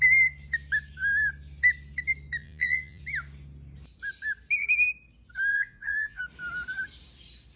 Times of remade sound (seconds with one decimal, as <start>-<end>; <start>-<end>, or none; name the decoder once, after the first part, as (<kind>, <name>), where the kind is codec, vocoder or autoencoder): 2.4-3.0 (vocoder, Vocos); 5.5-6.2

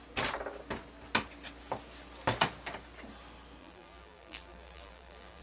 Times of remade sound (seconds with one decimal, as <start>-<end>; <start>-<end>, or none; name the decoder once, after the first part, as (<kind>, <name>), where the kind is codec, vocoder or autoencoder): 3.6-5.4 (vocoder, BigVGAN v2)